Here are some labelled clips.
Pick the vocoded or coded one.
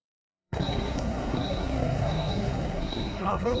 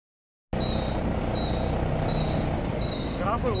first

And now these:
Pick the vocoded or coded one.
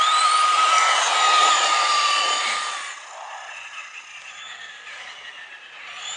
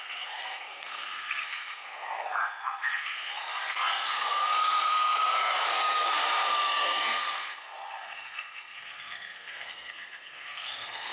second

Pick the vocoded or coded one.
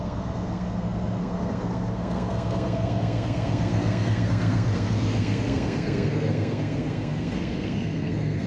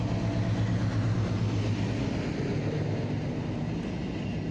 first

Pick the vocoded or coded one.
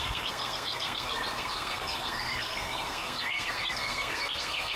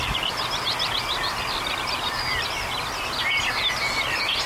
first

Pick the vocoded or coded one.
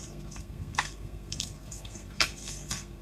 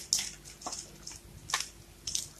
first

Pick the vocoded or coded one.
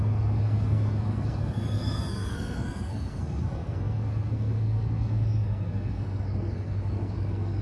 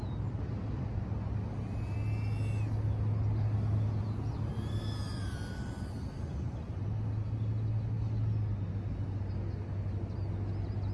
first